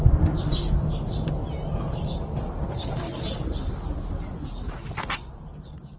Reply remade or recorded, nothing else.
recorded